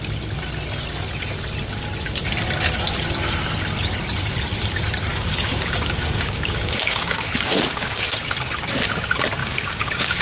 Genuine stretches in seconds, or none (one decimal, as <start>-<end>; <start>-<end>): 0.0-5.1; 8.2-9.4